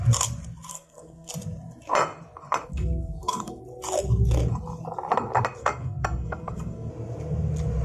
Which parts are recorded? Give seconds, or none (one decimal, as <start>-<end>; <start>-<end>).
0.0-0.7; 1.3-2.7; 3.6-5.6; 6.9-7.8